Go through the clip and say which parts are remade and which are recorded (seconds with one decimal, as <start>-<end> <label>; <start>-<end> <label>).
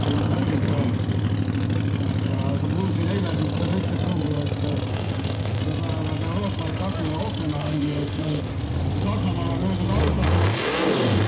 0.0-4.9 recorded; 4.9-5.6 remade; 5.6-7.6 recorded; 7.6-8.5 remade; 8.5-11.3 recorded